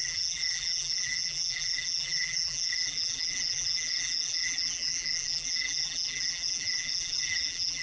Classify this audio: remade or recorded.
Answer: remade